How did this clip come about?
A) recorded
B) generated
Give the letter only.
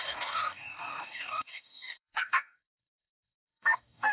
B